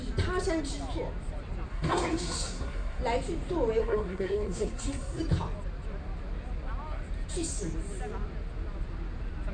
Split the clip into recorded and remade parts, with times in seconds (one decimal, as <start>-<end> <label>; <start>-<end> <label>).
0.0-1.7 recorded; 1.7-3.0 remade; 3.0-3.8 recorded; 3.8-5.2 remade; 5.2-9.5 recorded